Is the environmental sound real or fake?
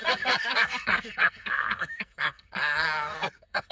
fake